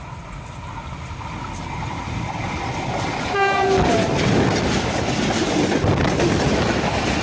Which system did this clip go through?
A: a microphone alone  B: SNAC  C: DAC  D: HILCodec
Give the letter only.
A